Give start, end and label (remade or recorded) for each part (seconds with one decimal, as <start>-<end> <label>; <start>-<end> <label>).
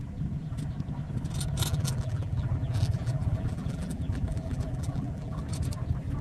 0.0-1.7 recorded; 1.7-5.4 remade; 5.4-6.2 recorded